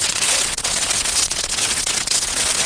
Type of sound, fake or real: fake